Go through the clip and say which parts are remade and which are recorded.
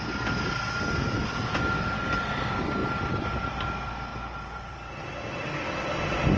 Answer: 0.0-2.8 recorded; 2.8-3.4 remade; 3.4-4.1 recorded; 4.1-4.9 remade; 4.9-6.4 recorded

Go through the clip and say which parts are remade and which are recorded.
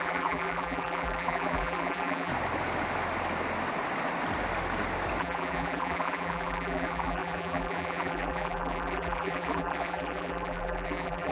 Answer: 0.0-2.3 remade; 2.3-5.2 recorded; 5.2-11.3 remade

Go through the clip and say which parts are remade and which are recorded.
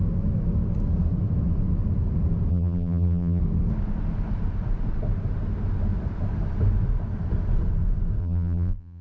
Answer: 0.0-2.5 recorded; 2.5-3.4 remade; 3.4-8.2 recorded; 8.2-9.0 remade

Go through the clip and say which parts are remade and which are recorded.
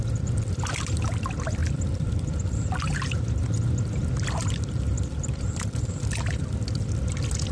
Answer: 0.0-1.6 recorded; 1.6-3.1 remade; 3.1-4.9 recorded; 4.9-6.4 remade; 6.4-7.5 recorded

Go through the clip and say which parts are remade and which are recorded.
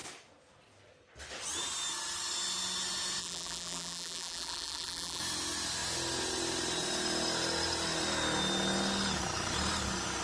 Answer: 0.0-3.2 recorded; 3.2-5.2 remade; 5.2-10.2 recorded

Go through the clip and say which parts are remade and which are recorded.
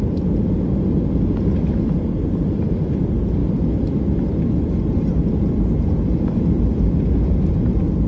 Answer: 0.0-8.1 recorded